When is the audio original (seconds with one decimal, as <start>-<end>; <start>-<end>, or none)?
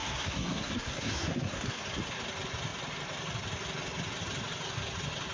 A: 1.8-5.3